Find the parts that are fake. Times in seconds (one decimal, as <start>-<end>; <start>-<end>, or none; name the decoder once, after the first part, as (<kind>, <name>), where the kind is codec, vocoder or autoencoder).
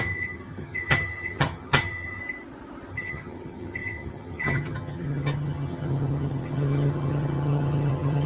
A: 0.0-2.2 (vocoder, HiFi-GAN); 2.9-8.3